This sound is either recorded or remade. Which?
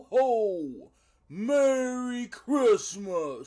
recorded